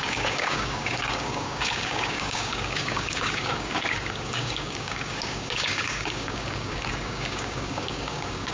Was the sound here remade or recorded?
remade